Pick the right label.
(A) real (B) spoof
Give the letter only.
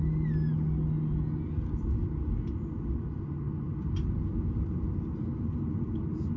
A